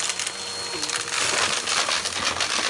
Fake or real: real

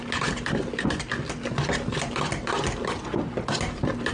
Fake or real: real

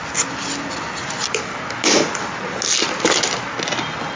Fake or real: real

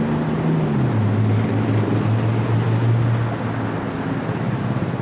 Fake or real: real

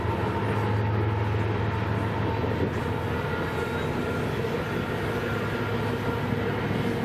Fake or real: real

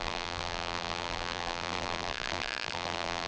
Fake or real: fake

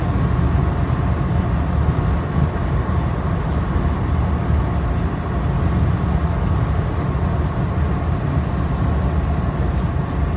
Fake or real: real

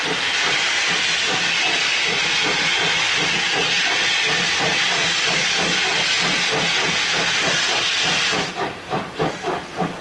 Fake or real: real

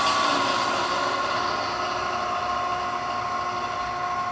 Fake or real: real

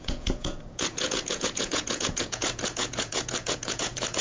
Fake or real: fake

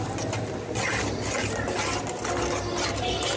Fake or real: real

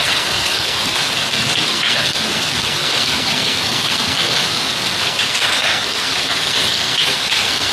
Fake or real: fake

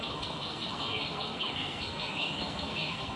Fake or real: fake